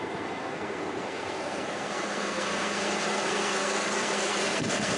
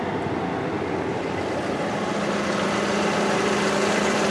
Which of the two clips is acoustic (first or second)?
second